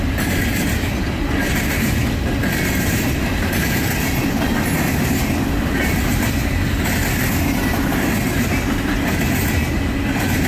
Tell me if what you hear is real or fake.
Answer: real